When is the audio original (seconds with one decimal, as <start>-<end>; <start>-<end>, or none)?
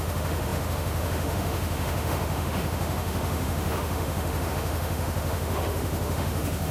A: none